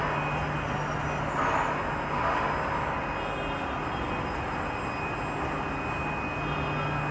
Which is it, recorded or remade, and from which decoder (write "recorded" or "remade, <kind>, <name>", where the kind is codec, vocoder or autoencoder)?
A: recorded